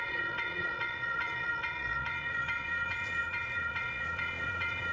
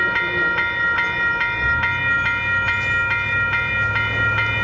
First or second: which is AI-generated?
first